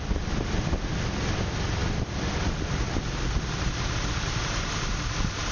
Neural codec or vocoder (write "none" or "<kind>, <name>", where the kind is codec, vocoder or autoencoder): none